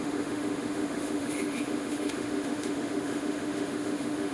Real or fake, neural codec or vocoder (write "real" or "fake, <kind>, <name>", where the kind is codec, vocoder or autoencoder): fake, autoencoder, DAC-VAE